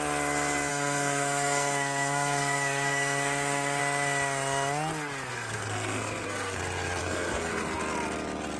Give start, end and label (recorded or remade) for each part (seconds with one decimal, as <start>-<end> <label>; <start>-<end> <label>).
0.0-0.7 recorded; 0.7-3.8 remade; 3.8-5.3 recorded; 5.3-6.6 remade; 6.6-7.0 recorded; 7.0-7.8 remade; 7.8-8.6 recorded